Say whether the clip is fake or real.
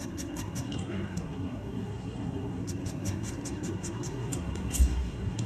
fake